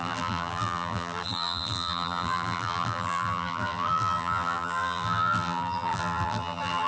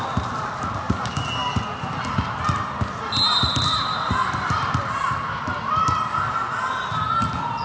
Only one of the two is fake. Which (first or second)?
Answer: first